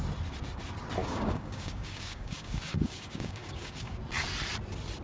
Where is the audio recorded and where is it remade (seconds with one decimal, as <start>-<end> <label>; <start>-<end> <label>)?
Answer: 0.0-1.0 recorded; 1.0-4.0 remade; 4.0-5.0 recorded